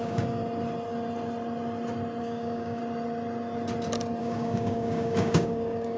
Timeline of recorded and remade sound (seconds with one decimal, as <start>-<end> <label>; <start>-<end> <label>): 0.0-0.4 remade; 0.4-2.2 recorded; 2.2-2.8 remade; 2.8-4.2 recorded; 4.2-6.0 remade